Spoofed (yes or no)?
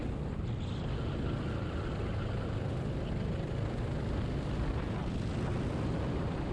no